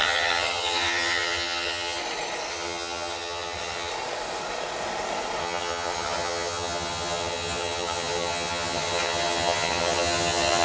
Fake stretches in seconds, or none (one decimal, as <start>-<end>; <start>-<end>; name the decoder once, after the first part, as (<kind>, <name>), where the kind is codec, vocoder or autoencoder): 0.0-2.0 (vocoder, HiFi-GAN); 2.5-3.9; 5.4-10.6

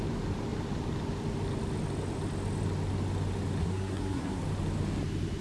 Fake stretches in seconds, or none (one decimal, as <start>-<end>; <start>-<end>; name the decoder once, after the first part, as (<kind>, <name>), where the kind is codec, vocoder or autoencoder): 3.6-4.4 (codec, SNAC)

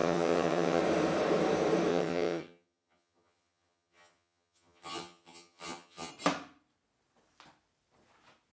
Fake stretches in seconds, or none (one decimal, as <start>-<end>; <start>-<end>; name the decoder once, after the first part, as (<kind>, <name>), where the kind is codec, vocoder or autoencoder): 0.0-0.8 (vocoder, HiFi-GAN); 1.9-6.1

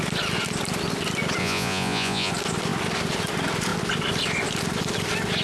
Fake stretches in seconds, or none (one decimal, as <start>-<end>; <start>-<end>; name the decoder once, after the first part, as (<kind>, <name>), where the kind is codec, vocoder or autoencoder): 1.4-2.3 (vocoder, Vocos)

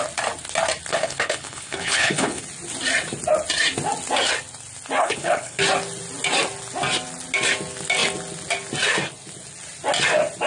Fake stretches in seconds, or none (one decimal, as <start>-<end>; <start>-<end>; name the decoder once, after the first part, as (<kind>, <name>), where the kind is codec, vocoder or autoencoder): 0.9-2.4 (codec, HILCodec); 5.0-5.6

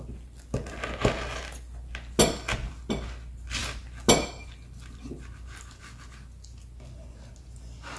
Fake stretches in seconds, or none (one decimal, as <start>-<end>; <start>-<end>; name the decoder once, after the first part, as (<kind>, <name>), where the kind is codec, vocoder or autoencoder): none